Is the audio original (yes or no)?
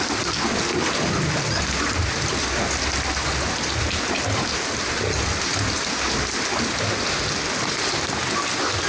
yes